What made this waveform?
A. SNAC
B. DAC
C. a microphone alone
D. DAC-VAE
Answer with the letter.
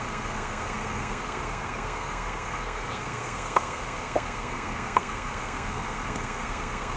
A